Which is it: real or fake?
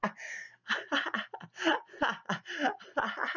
real